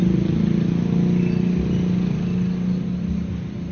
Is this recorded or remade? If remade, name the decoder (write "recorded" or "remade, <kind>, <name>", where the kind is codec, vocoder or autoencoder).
recorded